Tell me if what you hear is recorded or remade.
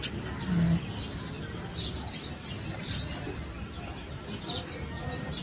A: recorded